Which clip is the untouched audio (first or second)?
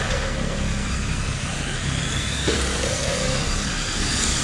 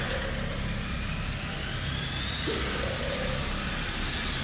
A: second